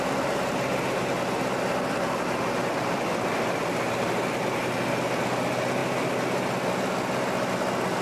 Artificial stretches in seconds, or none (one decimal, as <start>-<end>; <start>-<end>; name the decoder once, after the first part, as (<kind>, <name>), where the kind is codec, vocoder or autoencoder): none